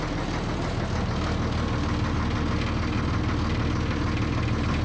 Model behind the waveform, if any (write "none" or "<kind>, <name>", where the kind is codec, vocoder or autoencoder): none